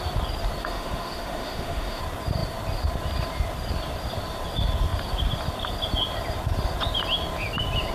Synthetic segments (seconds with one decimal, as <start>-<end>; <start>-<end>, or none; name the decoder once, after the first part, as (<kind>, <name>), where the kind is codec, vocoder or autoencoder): 0.6-2.0 (autoencoder, DAC-VAE)

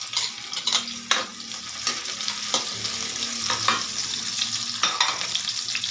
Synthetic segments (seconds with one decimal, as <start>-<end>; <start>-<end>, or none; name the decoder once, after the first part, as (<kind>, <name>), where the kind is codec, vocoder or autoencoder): none

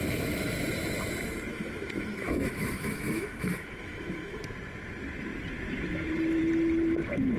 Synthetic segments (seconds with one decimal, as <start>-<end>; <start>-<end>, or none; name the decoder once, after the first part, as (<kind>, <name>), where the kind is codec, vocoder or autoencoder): 1.5-4.4 (autoencoder, DAC-VAE)